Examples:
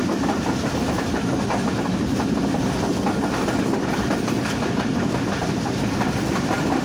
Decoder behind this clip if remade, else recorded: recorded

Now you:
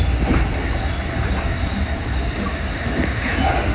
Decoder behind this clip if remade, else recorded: recorded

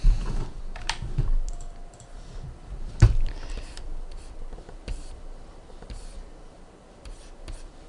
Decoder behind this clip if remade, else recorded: remade, vocoder, BigVGAN v2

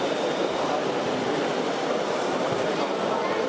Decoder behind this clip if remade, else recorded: recorded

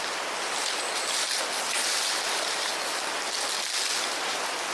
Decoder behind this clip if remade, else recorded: recorded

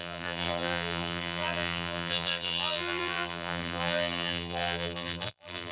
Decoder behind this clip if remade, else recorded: remade, vocoder, BigVGAN v2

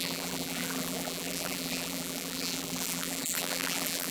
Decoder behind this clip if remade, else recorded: remade, vocoder, BigVGAN v2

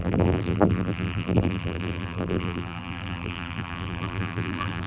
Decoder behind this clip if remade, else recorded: remade, vocoder, BigVGAN v2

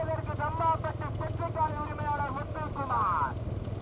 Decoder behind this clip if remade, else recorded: recorded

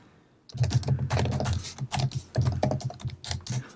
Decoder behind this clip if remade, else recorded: recorded